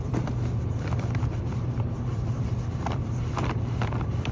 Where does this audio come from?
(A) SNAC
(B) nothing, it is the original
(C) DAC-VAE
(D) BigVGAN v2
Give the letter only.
D